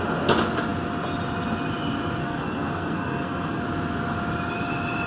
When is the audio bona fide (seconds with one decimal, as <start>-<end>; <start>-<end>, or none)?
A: 0.0-2.2; 3.6-5.1